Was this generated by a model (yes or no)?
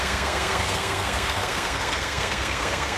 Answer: yes